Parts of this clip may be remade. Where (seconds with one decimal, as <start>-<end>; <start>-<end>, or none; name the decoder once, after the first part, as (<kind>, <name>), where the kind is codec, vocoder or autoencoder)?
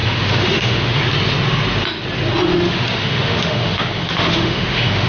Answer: 0.0-1.0 (autoencoder, DAC-VAE); 2.5-5.1